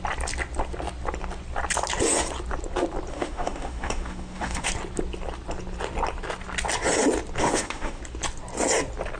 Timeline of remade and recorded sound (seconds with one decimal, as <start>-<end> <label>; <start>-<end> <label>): 0.0-3.1 recorded; 3.1-4.7 remade; 4.7-7.4 recorded; 7.4-8.0 remade; 8.0-9.2 recorded